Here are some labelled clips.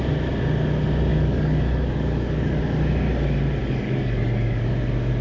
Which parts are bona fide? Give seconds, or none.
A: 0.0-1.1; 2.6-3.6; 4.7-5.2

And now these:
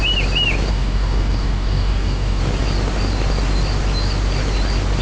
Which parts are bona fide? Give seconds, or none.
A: 0.0-0.7; 2.4-5.0

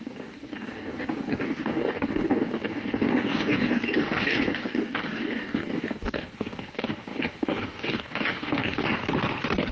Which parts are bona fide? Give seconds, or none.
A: 9.0-9.7

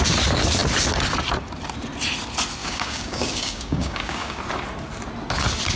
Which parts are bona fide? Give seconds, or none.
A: 0.0-2.6; 4.4-5.8

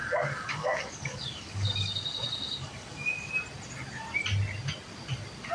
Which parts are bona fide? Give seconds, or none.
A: 3.3-5.5